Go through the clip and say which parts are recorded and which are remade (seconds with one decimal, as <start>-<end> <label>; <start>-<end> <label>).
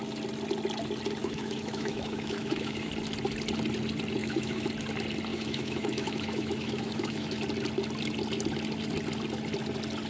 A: 0.0-1.2 recorded; 1.2-2.9 remade; 2.9-4.2 recorded; 4.2-4.7 remade; 4.7-5.3 recorded; 5.3-7.4 remade; 7.4-10.1 recorded